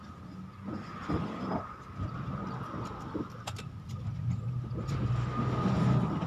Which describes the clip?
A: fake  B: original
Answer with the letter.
B